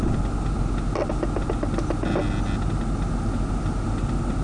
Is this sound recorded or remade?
recorded